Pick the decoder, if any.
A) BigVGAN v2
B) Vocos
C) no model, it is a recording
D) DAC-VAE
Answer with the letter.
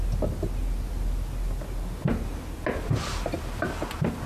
C